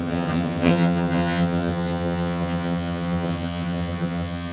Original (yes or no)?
no